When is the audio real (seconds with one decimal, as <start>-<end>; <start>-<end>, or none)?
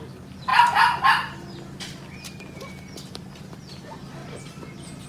0.5-3.6